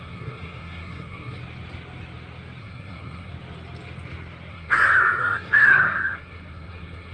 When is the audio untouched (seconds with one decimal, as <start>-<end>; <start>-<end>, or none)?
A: 1.4-2.6; 3.3-4.5